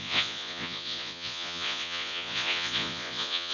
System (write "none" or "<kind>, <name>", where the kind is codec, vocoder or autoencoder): vocoder, Vocos